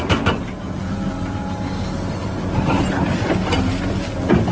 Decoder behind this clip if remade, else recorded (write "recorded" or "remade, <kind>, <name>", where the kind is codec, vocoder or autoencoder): recorded